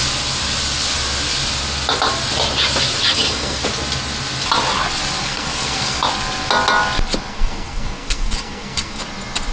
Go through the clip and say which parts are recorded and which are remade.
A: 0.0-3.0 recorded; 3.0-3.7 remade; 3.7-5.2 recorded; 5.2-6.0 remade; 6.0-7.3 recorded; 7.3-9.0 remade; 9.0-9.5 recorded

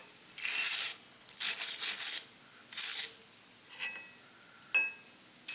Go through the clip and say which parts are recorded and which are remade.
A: 0.0-0.9 recorded; 0.9-1.5 remade; 1.5-5.5 recorded

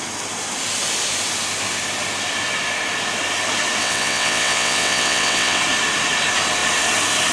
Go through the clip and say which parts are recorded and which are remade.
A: 0.0-3.8 recorded; 3.8-5.6 remade; 5.6-7.3 recorded

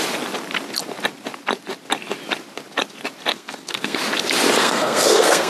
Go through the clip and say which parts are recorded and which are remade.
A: 0.0-3.3 recorded; 3.3-4.0 remade; 4.0-4.6 recorded; 4.6-5.5 remade